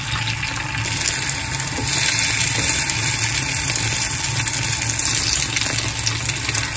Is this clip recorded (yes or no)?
yes